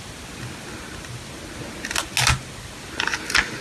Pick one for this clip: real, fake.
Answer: real